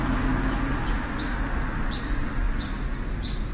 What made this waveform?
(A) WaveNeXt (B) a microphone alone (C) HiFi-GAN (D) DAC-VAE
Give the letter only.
B